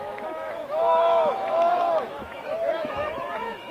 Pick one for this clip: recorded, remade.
remade